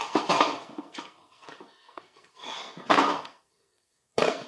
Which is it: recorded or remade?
remade